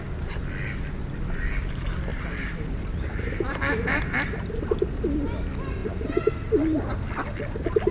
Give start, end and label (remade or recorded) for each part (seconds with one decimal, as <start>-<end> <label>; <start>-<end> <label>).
0.0-2.1 recorded; 2.1-4.0 remade; 4.0-5.8 recorded; 5.8-6.5 remade; 6.5-7.9 recorded